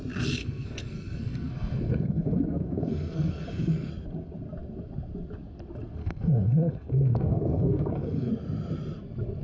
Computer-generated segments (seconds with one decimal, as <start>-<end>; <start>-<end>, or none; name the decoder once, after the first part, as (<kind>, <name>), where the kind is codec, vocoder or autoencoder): 0.4-3.9 (codec, SNAC); 6.0-8.3